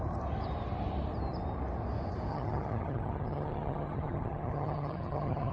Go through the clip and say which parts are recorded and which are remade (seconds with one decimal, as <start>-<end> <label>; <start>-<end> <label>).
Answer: 0.0-2.3 recorded; 2.3-5.5 remade